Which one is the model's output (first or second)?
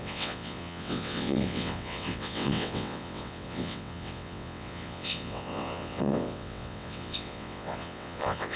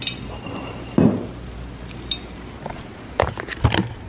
first